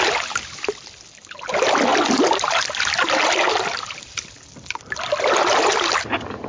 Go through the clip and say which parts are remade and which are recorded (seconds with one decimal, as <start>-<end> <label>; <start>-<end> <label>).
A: 0.0-6.5 recorded